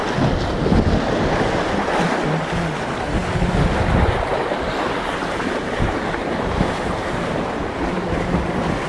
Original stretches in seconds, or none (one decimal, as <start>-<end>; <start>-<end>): 0.0-5.2